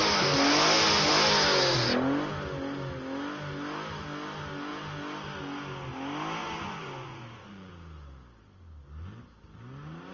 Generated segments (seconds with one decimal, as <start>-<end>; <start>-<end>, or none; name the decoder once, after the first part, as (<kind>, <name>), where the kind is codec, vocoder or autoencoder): 6.4-7.7 (vocoder, Vocos)